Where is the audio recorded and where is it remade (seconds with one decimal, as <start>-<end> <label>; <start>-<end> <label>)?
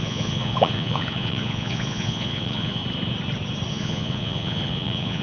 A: 0.0-2.8 remade; 2.8-3.7 recorded; 3.7-5.2 remade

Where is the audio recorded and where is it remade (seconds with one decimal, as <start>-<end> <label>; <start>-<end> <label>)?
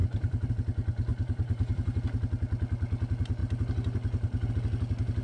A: 0.0-0.5 remade; 0.5-1.1 recorded; 1.1-2.0 remade; 2.0-5.2 recorded